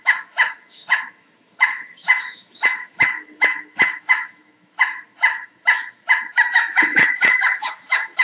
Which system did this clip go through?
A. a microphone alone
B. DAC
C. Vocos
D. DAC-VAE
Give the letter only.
D